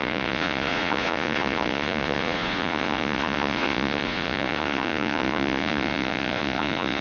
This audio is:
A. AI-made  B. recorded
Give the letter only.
A